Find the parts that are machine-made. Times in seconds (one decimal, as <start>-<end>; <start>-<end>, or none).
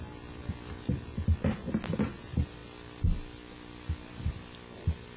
none